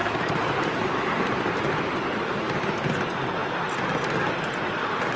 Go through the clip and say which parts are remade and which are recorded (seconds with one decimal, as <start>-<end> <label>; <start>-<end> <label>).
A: 0.0-5.2 recorded